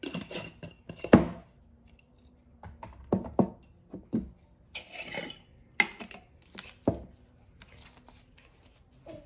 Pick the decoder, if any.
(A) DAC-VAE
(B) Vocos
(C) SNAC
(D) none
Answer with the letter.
D